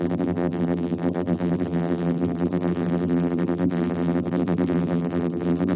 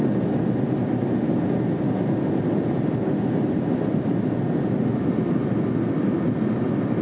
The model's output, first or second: first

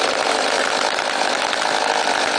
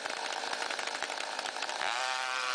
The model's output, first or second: second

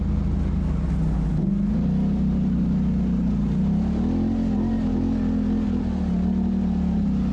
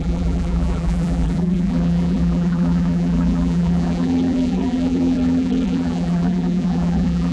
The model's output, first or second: second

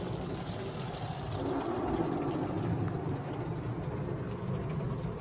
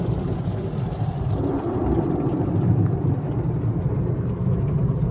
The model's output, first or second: second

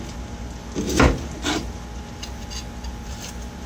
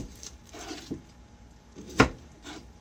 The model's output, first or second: second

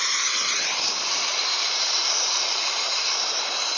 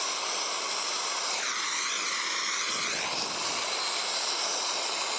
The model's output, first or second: first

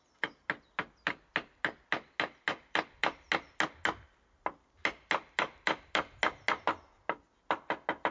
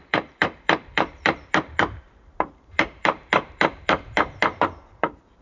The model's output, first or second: second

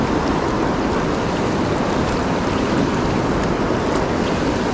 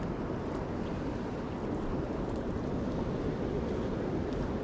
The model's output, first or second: first